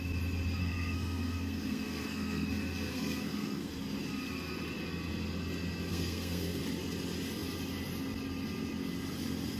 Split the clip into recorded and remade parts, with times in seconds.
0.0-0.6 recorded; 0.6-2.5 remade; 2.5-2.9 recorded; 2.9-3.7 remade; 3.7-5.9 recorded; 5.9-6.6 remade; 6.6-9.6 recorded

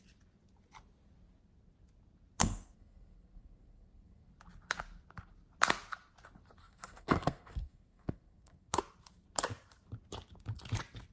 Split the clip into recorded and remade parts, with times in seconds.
0.0-2.4 recorded; 2.4-4.3 remade; 4.3-6.6 recorded; 6.6-8.8 remade; 8.8-11.1 recorded

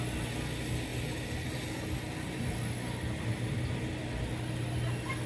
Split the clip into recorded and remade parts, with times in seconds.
0.0-5.3 recorded